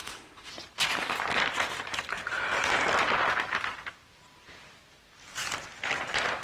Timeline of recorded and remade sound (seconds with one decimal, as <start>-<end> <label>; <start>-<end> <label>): 0.0-0.5 remade; 0.5-6.4 recorded